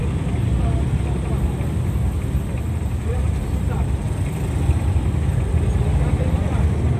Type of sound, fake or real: real